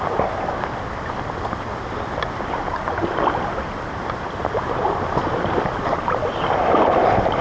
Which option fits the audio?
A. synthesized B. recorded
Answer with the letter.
A